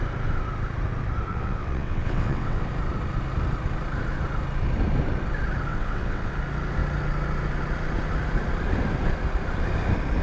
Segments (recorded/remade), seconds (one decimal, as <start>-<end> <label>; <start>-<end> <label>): 0.0-1.3 recorded; 1.3-2.7 remade; 2.7-5.7 recorded; 5.7-6.3 remade; 6.3-10.2 recorded